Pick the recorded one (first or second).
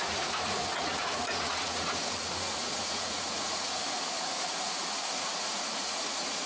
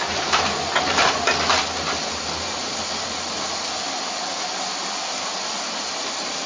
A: second